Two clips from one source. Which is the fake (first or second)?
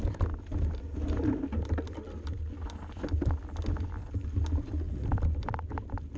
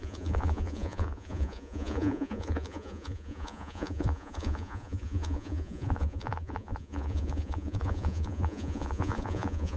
second